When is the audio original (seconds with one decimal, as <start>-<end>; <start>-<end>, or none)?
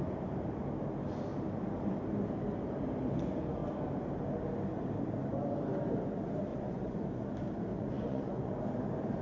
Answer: 0.0-6.5; 7.3-7.7; 8.5-9.2